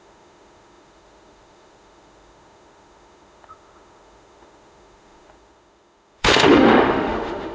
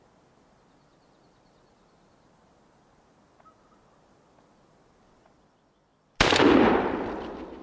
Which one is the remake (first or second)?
first